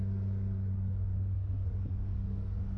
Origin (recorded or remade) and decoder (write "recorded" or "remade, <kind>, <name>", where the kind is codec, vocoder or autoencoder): remade, codec, DAC